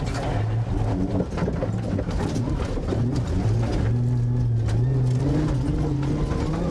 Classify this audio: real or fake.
real